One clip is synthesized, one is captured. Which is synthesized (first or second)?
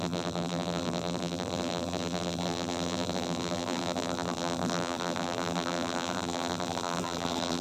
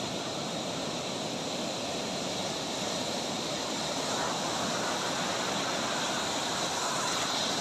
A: first